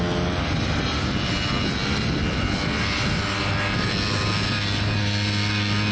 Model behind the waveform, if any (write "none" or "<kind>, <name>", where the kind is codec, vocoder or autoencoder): none